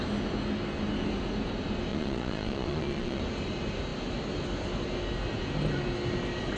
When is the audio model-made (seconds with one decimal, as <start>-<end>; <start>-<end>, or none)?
1.9-3.2